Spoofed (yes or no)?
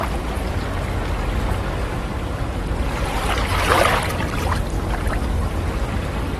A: no